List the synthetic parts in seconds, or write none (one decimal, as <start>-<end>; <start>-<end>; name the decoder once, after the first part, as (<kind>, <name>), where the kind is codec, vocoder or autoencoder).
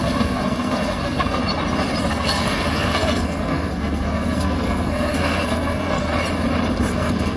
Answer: 0.0-1.4 (codec, SNAC); 2.1-6.1; 6.9-7.4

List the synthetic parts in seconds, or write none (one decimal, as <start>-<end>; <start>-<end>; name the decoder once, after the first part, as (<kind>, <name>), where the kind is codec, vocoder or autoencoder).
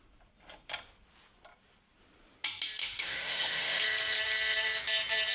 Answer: 2.8-3.8 (autoencoder, DAC-VAE)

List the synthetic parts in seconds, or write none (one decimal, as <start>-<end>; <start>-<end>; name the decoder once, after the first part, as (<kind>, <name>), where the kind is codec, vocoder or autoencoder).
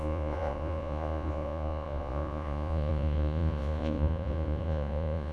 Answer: 0.0-5.3 (vocoder, Vocos)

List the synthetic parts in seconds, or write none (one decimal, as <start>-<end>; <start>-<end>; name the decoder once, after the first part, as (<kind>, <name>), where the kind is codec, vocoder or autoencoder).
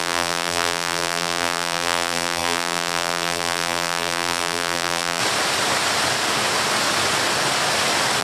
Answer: 0.0-5.2 (vocoder, BigVGAN v2)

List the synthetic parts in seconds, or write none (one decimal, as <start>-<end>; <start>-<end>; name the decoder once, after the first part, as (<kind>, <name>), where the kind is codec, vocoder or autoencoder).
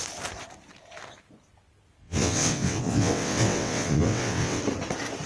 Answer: 2.0-4.6 (vocoder, WaveNeXt)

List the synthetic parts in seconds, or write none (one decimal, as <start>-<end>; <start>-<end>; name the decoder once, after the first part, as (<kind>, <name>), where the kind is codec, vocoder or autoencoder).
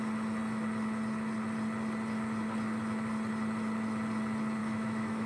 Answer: 4.6-5.3 (autoencoder, DAC-VAE)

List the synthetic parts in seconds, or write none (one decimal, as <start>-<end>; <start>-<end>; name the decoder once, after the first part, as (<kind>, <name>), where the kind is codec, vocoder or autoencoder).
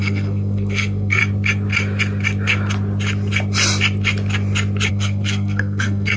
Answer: 0.0-1.2 (codec, SNAC); 4.9-6.2